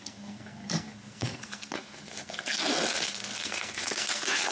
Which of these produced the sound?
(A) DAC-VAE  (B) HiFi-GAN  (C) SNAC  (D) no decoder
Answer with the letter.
C